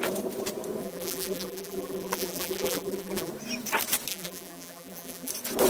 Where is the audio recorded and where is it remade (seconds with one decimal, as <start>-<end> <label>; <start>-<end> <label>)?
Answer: 0.0-0.8 recorded; 0.8-3.3 remade; 3.3-4.1 recorded; 4.1-5.3 remade; 5.3-5.7 recorded